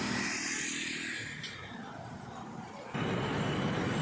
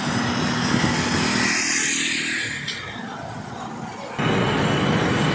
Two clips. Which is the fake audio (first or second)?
first